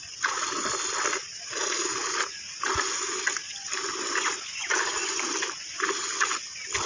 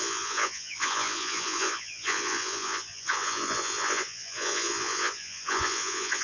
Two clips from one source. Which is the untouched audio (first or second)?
first